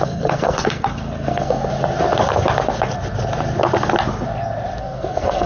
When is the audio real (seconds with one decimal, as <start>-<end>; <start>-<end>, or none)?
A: 1.6-4.8

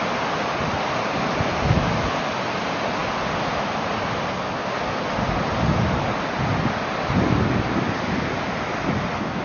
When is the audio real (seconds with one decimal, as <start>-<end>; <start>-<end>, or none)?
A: 0.0-9.4

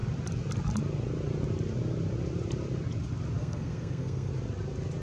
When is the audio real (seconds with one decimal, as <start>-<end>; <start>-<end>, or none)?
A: 0.0-3.4; 4.3-5.0

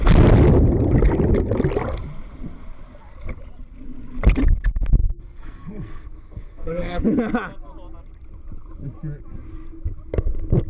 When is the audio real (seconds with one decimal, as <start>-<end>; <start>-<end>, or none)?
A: 0.0-5.0; 7.0-10.7